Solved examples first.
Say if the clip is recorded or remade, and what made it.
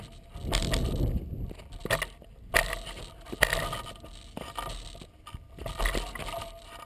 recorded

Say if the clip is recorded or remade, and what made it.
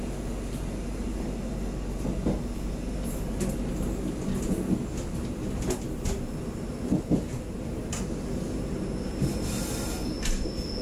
recorded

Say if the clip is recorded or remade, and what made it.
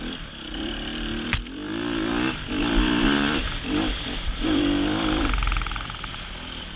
remade, vocoder, BigVGAN v2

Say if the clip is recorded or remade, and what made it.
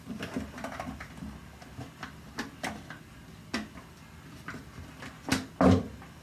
recorded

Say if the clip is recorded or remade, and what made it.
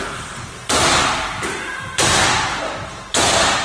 remade, vocoder, BigVGAN v2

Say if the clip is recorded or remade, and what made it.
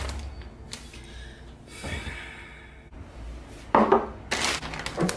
recorded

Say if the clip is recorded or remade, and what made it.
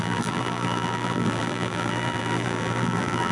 remade, vocoder, BigVGAN v2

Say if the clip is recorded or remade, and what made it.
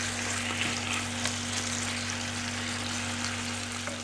recorded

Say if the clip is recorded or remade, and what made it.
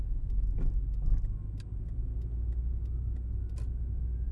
recorded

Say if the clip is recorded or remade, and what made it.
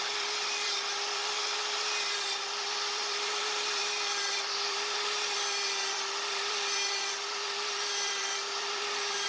remade, vocoder, BigVGAN v2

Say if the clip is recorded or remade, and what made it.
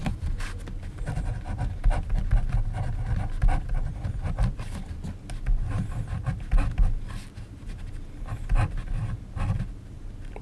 recorded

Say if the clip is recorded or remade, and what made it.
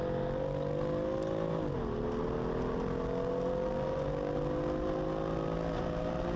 recorded